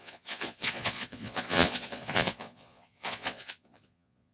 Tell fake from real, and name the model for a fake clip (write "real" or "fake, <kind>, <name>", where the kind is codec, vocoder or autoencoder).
fake, vocoder, Vocos